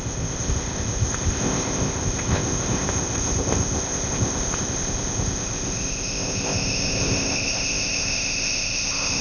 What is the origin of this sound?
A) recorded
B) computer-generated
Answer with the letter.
B